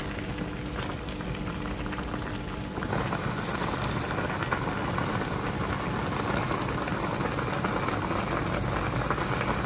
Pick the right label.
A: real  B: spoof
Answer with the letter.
A